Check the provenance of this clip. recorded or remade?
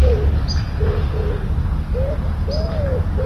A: recorded